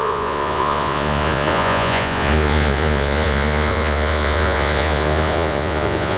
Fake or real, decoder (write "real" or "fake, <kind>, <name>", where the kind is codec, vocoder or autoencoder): fake, vocoder, Vocos